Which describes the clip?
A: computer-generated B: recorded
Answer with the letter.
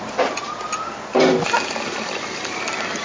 B